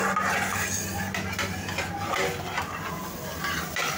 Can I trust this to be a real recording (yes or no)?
yes